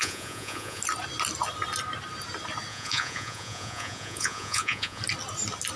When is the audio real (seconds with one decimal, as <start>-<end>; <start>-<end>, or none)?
0.8-2.7; 5.0-5.8